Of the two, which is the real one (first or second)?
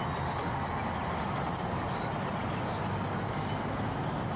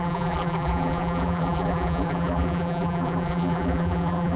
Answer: first